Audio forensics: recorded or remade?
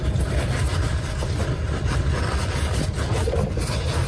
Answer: recorded